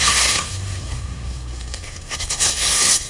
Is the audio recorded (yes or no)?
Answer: no